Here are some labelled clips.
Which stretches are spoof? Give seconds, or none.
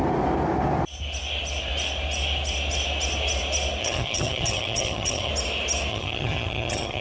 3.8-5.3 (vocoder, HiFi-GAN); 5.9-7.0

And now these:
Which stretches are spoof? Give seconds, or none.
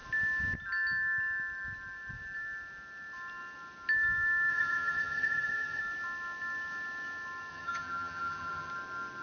4.5-5.8 (vocoder, HiFi-GAN); 7.5-8.7